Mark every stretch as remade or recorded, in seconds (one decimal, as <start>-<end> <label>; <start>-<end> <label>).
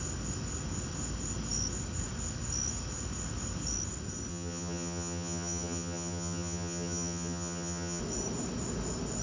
0.0-4.3 recorded; 4.3-8.0 remade; 8.0-9.2 recorded